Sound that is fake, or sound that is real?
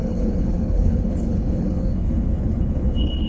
fake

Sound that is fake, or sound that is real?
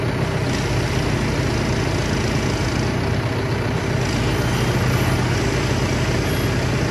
real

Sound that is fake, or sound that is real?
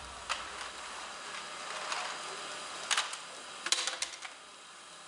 real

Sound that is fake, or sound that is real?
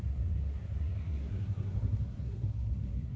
fake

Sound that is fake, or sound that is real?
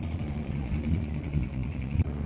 fake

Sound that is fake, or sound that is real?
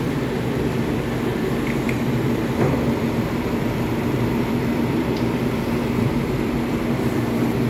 fake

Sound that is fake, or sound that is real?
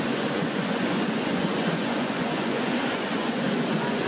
fake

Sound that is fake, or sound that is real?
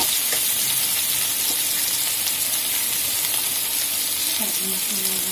real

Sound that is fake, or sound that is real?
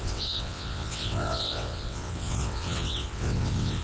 fake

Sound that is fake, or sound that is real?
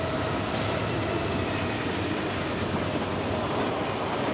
real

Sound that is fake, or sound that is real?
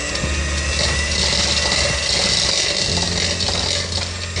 real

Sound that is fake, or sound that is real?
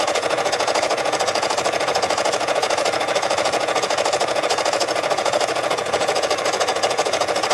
fake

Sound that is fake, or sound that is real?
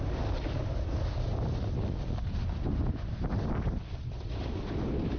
real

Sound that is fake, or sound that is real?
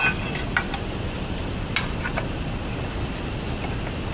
real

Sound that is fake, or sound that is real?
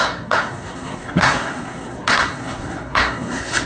fake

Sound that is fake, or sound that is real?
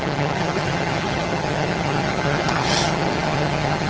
fake